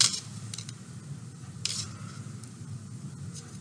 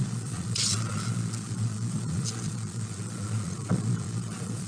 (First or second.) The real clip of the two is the first